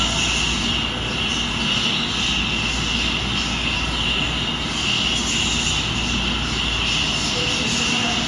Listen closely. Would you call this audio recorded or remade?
recorded